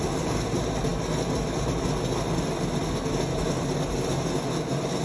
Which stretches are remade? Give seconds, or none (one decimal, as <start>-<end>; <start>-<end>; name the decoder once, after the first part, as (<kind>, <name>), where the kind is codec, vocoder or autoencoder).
none